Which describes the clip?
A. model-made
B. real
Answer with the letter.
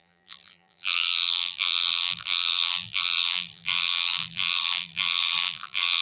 A